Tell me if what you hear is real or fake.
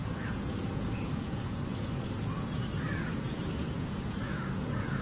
fake